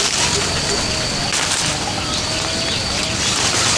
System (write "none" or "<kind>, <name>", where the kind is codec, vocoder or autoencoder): none